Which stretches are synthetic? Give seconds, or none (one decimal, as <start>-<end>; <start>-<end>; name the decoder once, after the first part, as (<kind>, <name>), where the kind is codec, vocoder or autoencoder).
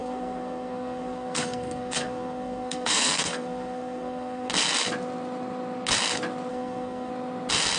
0.0-4.5 (codec, SNAC); 6.5-7.1